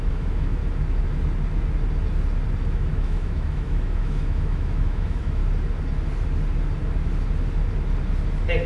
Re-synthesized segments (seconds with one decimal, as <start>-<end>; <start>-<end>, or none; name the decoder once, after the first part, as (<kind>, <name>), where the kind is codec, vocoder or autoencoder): 0.0-0.6 (autoencoder, DAC-VAE); 2.7-5.4